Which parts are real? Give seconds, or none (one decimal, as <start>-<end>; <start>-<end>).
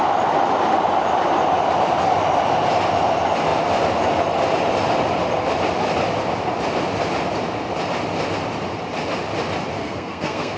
0.0-9.8